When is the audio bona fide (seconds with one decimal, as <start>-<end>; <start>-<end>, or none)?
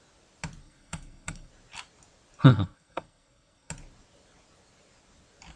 0.0-0.6; 1.5-2.5; 3.7-5.6